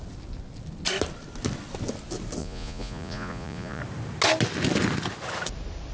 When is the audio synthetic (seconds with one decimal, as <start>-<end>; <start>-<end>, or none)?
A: 2.4-3.8